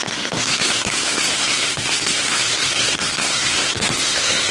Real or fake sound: fake